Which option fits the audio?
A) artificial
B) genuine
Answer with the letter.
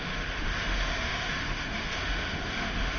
A